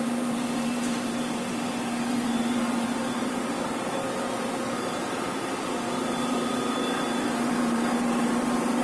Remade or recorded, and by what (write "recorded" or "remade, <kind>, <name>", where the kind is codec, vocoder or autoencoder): remade, vocoder, BigVGAN v2